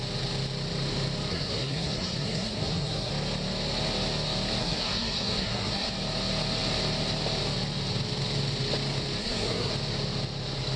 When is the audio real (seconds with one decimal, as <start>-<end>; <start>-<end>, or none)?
0.0-1.3; 3.1-4.6; 5.9-9.2; 9.7-10.8